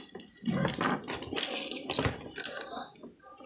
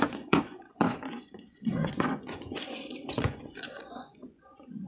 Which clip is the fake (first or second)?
second